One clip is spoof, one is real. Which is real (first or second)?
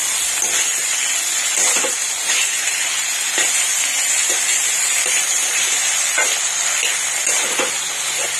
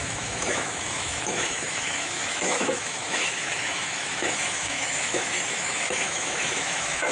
first